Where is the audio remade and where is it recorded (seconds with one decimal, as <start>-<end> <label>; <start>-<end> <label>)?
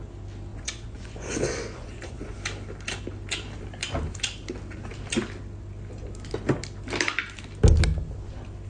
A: 0.0-0.5 recorded; 0.5-2.4 remade; 2.4-8.7 recorded